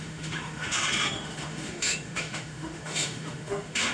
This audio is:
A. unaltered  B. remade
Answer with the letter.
B